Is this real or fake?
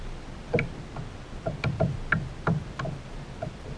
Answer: real